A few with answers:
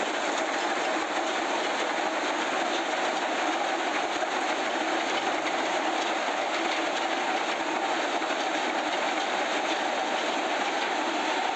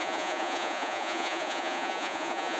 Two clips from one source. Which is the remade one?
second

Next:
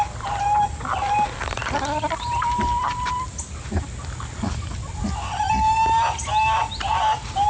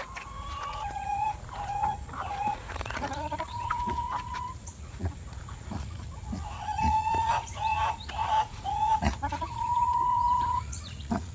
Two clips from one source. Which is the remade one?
second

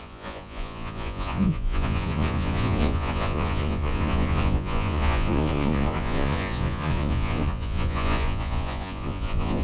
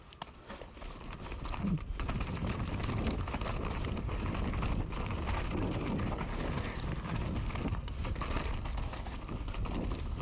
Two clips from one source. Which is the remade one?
first